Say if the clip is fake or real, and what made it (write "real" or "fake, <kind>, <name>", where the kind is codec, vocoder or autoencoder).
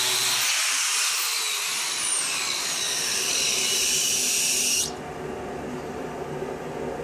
real